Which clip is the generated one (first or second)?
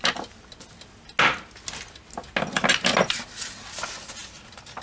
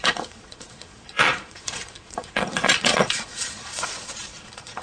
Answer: second